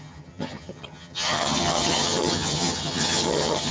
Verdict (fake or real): fake